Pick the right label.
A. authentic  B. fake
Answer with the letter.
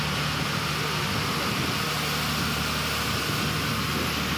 A